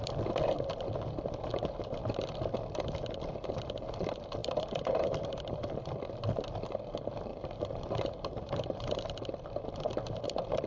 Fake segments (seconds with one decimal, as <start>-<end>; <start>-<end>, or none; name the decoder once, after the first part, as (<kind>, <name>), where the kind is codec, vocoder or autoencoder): 4.4-5.6 (vocoder, BigVGAN v2); 7.3-9.0